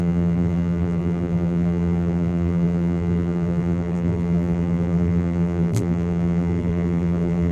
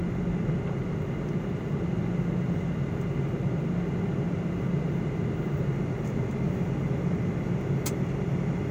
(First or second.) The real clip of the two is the second